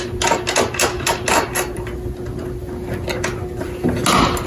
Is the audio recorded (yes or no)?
yes